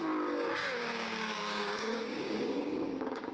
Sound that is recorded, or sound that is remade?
remade